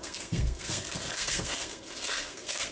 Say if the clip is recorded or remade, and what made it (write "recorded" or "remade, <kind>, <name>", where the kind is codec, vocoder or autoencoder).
remade, codec, SNAC